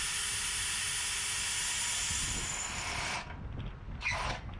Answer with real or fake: real